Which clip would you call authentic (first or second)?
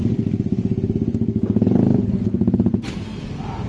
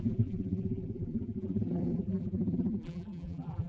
first